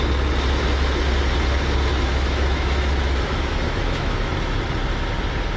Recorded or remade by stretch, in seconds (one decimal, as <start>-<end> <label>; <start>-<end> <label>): 0.0-2.1 recorded; 2.1-4.3 remade; 4.3-5.6 recorded